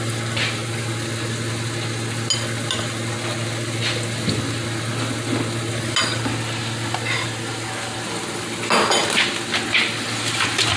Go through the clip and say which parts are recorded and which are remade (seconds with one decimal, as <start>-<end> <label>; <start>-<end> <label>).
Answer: 0.0-10.8 recorded

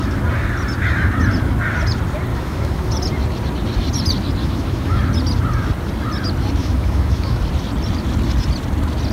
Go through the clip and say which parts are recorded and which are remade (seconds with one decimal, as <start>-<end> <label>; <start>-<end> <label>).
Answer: 0.0-2.3 recorded; 2.3-2.9 remade; 2.9-4.4 recorded; 4.4-5.0 remade; 5.0-6.6 recorded; 6.6-7.4 remade; 7.4-9.1 recorded

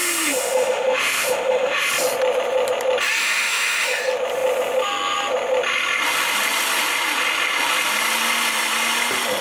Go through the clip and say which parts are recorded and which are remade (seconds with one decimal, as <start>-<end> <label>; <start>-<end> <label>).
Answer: 0.0-1.9 remade; 1.9-3.2 recorded; 3.2-4.0 remade; 4.0-9.4 recorded

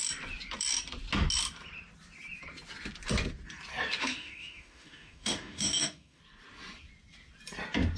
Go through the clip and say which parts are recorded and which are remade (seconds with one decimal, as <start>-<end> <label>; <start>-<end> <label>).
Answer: 0.0-4.0 recorded; 4.0-6.2 remade; 6.2-8.0 recorded

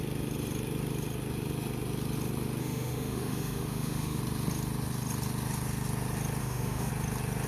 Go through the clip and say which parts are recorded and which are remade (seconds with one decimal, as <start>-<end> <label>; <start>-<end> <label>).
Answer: 0.0-2.6 recorded; 2.6-4.2 remade; 4.2-6.4 recorded; 6.4-6.9 remade; 6.9-7.5 recorded

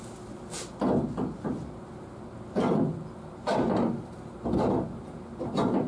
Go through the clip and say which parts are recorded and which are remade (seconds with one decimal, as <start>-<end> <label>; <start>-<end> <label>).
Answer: 0.0-5.9 recorded

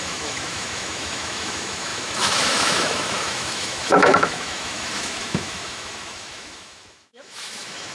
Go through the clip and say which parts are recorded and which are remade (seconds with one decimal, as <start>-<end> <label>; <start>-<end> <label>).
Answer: 0.0-7.9 remade

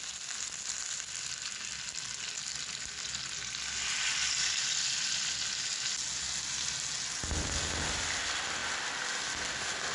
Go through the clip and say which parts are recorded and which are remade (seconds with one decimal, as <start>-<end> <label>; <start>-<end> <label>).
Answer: 0.0-9.9 recorded